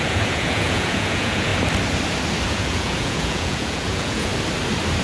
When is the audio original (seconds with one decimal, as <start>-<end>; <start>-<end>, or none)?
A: 1.5-2.5; 4.3-5.0